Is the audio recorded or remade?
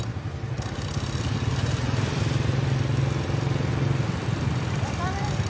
recorded